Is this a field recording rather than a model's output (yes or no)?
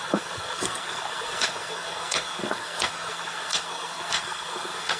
no